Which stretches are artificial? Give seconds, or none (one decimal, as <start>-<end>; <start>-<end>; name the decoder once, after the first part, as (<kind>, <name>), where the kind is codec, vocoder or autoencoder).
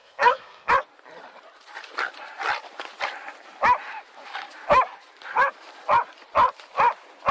0.0-0.7 (codec, SNAC)